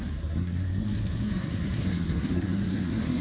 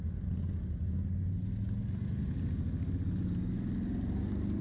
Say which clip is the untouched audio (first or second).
second